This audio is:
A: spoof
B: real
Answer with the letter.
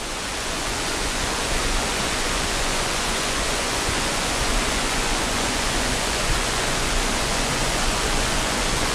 A